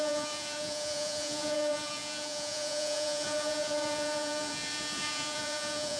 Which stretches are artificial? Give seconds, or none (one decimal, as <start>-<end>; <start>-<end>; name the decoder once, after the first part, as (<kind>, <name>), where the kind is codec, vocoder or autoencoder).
0.0-6.0 (vocoder, Vocos)